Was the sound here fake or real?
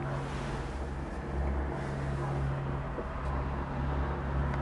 real